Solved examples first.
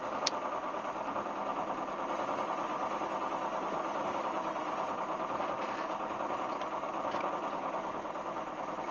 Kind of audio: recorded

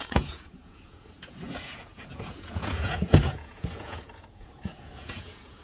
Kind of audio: remade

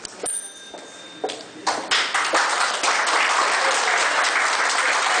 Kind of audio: recorded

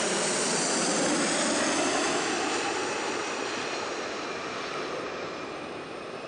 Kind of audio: recorded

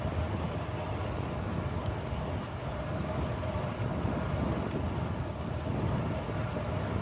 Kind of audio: recorded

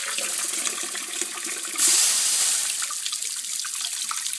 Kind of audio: recorded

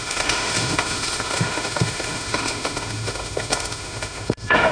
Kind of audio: remade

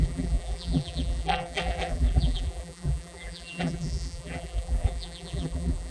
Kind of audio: remade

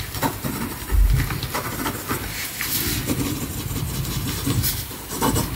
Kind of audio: recorded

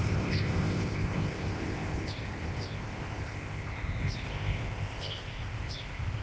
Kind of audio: remade